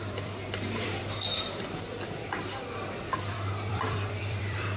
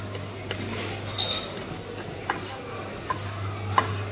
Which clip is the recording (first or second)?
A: second